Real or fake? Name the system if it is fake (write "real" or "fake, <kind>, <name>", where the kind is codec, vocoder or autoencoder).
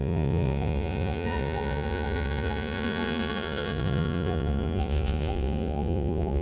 fake, vocoder, Vocos